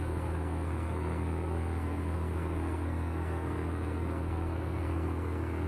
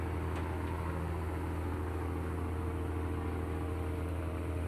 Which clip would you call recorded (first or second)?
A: second